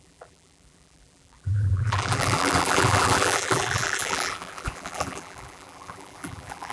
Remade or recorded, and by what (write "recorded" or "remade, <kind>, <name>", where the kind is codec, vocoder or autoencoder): remade, vocoder, BigVGAN v2